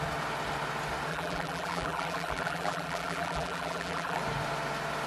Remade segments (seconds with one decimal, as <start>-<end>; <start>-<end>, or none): 1.1-4.2